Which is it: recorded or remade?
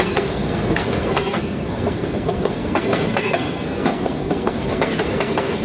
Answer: remade